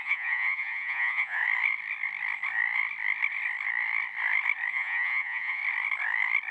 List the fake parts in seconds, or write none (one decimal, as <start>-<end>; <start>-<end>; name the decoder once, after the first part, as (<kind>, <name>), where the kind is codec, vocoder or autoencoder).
0.0-1.4 (vocoder, Vocos); 4.7-5.6